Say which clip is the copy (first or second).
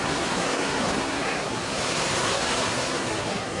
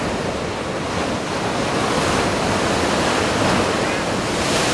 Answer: first